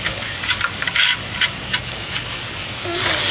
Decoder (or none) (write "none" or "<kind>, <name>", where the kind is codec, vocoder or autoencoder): codec, DAC